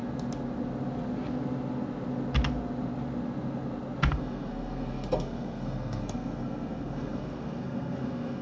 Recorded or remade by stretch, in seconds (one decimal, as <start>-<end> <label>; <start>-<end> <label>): 0.0-4.1 recorded; 4.1-8.4 remade

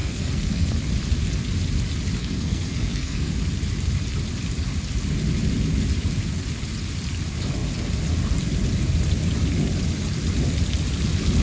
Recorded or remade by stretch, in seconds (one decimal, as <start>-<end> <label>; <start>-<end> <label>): 0.0-0.7 remade; 0.7-2.2 recorded; 2.2-3.3 remade; 3.3-11.4 recorded

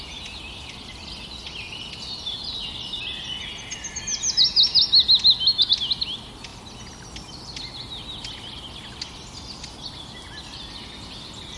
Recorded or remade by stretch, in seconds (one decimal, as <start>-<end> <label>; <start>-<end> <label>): 0.0-11.6 recorded